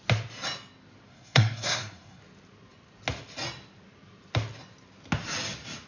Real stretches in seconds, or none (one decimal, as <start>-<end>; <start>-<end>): 0.0-1.1; 2.2-5.9